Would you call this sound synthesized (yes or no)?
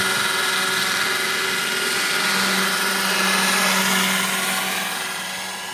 no